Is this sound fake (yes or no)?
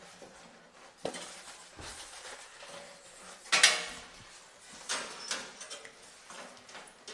no